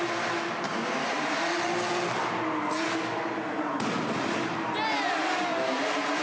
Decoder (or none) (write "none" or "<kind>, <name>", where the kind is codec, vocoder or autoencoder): none